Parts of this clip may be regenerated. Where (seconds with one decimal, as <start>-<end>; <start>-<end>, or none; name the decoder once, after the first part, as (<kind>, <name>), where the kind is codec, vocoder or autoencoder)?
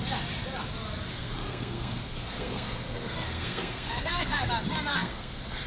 1.1-4.5 (codec, SNAC); 4.9-5.7